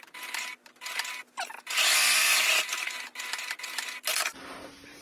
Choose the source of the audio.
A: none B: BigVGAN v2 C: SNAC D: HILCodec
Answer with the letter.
A